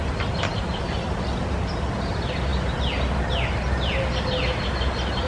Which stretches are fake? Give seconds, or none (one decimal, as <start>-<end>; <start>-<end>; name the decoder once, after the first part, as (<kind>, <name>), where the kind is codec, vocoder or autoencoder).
none